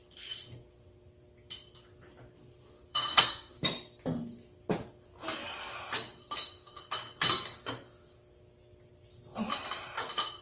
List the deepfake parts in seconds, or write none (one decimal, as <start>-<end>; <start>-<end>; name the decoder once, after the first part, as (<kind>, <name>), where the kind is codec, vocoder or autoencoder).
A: 2.9-3.5 (codec, SNAC)